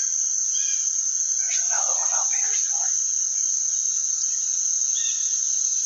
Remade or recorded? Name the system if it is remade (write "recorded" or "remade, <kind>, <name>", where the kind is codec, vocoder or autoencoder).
recorded